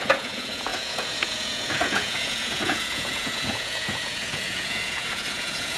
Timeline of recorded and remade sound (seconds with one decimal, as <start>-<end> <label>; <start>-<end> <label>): 0.0-5.8 remade